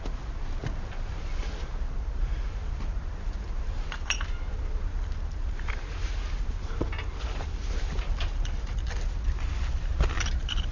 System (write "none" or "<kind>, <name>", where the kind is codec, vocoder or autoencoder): none